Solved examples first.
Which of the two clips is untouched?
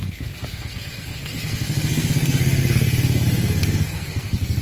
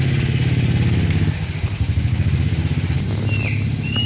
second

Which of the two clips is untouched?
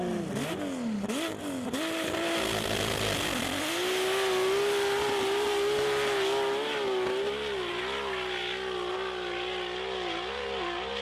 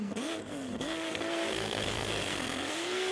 first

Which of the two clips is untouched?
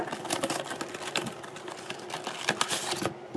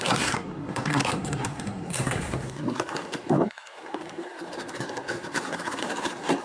first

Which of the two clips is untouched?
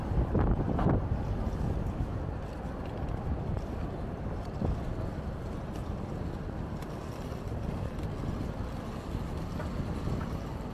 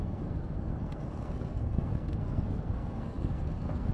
first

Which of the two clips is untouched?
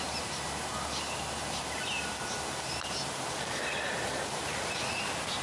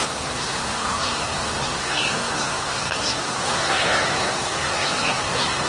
first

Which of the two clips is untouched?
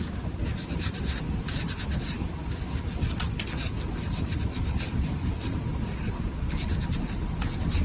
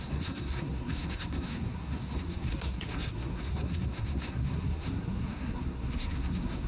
first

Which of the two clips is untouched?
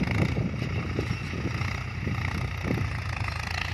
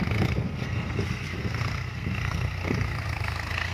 first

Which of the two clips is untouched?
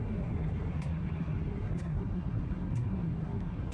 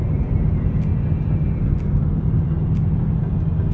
second